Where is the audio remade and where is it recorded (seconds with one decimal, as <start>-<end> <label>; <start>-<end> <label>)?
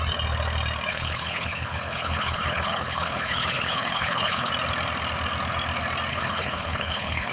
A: 0.0-0.9 recorded; 0.9-4.5 remade; 4.5-6.1 recorded; 6.1-7.3 remade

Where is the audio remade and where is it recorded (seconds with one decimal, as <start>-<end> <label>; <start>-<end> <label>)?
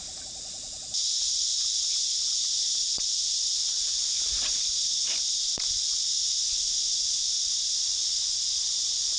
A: 0.0-9.2 recorded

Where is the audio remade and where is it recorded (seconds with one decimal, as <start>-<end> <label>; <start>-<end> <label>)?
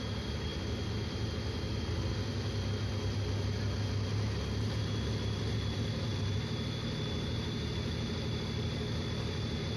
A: 0.0-9.8 recorded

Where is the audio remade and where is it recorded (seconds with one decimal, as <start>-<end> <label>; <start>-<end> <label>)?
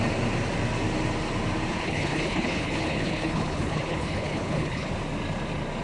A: 0.0-1.7 recorded; 1.7-4.9 remade; 4.9-5.8 recorded